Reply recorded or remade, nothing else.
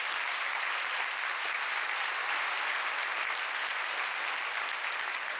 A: recorded